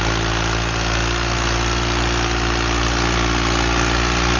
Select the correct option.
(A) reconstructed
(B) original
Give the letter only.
B